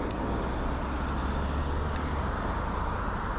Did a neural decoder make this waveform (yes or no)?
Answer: no